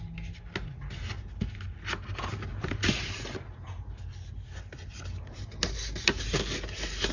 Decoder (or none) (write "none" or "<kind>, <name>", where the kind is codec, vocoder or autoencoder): none